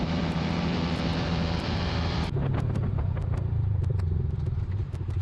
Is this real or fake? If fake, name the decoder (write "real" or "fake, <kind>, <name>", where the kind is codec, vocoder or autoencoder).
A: fake, vocoder, BigVGAN v2